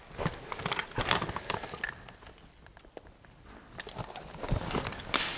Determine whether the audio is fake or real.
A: real